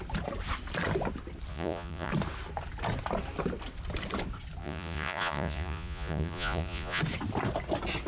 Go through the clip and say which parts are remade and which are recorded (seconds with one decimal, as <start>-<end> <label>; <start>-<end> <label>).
0.0-1.5 recorded; 1.5-2.1 remade; 2.1-4.6 recorded; 4.6-7.0 remade; 7.0-8.1 recorded